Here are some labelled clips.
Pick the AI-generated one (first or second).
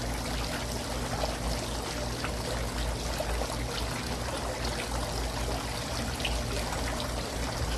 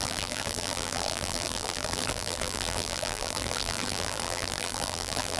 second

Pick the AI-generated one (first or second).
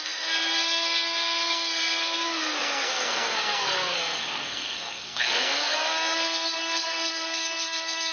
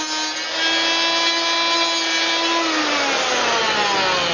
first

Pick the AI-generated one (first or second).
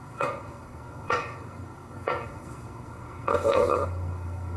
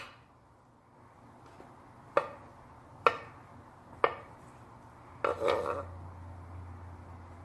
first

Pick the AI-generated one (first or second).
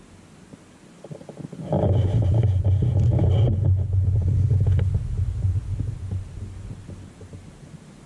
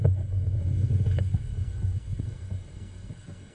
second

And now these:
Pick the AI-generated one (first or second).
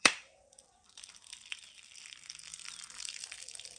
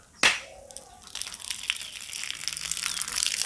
first